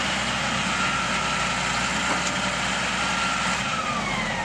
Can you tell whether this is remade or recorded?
recorded